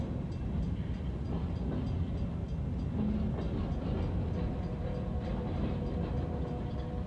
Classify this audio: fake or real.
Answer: real